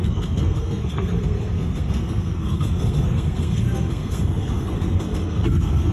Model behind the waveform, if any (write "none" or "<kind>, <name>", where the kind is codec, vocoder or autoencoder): codec, SNAC